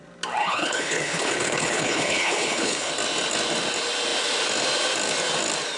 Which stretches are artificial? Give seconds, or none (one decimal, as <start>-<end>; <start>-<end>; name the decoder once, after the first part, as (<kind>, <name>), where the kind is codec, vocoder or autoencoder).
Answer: 0.4-2.9 (codec, HILCodec)